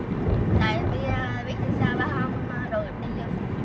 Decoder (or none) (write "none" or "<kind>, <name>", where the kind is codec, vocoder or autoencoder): vocoder, BigVGAN v2